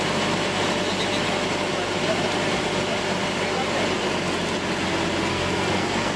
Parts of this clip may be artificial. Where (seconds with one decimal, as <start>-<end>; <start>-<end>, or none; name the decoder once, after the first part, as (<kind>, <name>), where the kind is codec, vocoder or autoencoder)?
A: 5.3-6.2 (codec, SNAC)